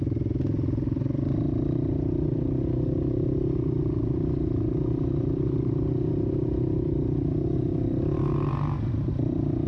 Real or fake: real